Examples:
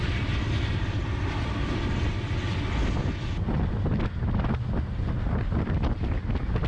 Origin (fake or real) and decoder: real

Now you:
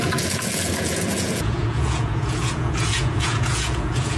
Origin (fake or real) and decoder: fake, vocoder, Vocos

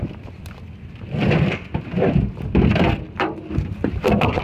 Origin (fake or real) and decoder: real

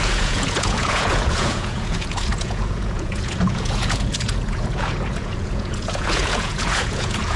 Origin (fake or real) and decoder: fake, vocoder, Vocos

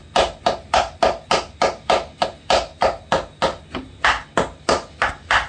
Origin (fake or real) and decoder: real